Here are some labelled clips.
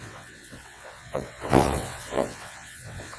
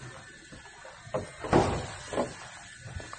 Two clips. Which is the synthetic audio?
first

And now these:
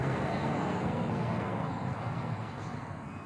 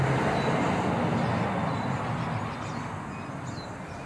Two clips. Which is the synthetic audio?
first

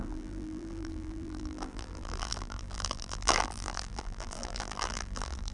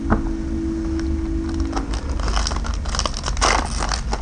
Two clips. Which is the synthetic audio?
first